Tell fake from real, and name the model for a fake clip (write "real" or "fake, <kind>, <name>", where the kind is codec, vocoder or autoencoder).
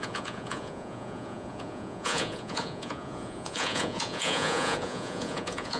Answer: fake, vocoder, Vocos